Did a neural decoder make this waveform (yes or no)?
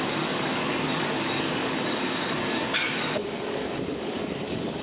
yes